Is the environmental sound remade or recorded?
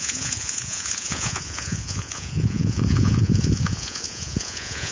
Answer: remade